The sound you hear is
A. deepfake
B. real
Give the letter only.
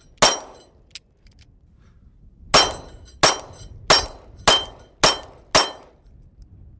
B